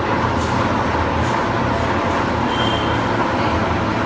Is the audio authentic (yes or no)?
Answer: yes